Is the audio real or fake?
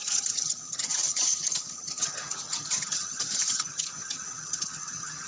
fake